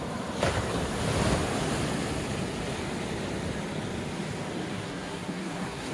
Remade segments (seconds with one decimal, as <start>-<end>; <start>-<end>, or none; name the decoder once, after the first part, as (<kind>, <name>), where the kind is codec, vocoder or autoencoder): 4.7-5.9 (codec, SNAC)